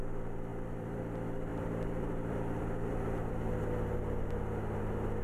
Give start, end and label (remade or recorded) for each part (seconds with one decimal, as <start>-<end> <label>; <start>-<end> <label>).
0.0-0.5 recorded; 0.5-1.0 remade; 1.0-1.5 recorded; 1.5-3.3 remade; 3.3-5.2 recorded